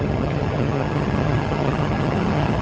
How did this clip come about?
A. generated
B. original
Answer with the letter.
A